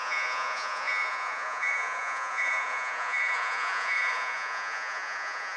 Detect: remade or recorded remade